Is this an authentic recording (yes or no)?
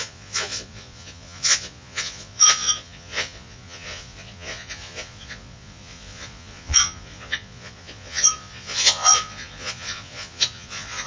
no